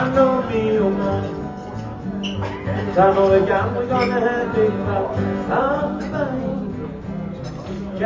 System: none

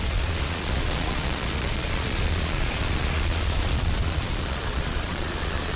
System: vocoder, Vocos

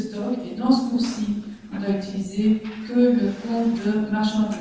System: none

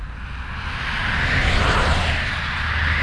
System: none